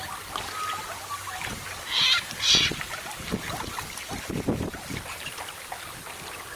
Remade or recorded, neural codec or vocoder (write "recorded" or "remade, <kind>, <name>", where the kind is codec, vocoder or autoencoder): recorded